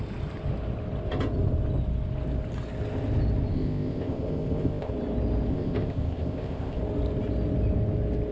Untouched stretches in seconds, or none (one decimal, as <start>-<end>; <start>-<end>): 0.0-3.5; 4.9-5.5; 6.8-8.3